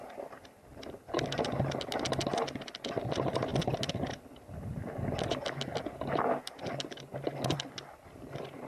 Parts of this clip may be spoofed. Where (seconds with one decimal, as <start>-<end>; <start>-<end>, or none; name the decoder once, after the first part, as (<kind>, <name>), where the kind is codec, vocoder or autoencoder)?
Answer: none